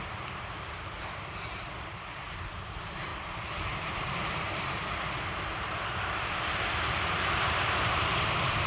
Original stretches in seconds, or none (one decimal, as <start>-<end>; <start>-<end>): none